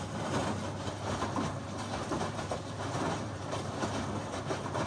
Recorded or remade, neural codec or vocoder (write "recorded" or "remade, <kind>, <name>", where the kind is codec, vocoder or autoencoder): remade, vocoder, BigVGAN v2